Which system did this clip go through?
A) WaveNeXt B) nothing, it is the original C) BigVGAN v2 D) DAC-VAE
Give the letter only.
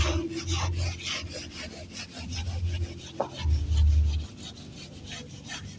B